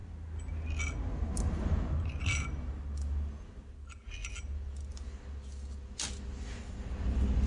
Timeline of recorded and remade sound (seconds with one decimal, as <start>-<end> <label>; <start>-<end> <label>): 0.0-7.5 recorded

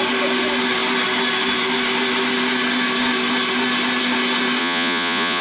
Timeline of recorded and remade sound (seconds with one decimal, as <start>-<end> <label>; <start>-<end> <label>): 0.0-4.6 recorded; 4.6-5.4 remade

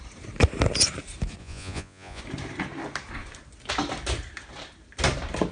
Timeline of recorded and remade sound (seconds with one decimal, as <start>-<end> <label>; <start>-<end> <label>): 0.0-1.4 recorded; 1.4-2.2 remade; 2.2-5.5 recorded

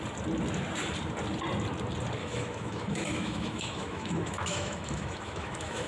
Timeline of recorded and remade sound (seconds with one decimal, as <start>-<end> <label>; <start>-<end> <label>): 0.0-2.2 recorded; 2.2-5.9 remade

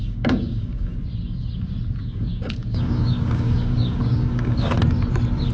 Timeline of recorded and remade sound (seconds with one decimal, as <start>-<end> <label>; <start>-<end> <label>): 0.0-1.0 remade; 1.0-2.0 recorded; 2.0-4.7 remade; 4.7-5.5 recorded

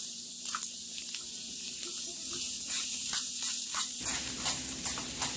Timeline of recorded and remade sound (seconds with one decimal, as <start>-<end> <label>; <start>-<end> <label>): 0.0-5.4 remade

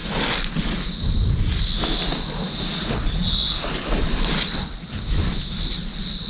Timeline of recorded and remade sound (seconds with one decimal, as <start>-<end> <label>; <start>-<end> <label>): 0.0-6.3 recorded